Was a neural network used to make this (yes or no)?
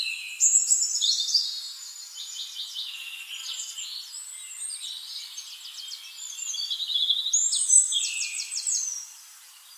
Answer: no